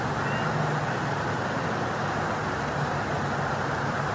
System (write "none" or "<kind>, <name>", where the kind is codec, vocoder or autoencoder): none